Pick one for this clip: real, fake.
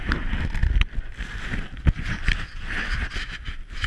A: real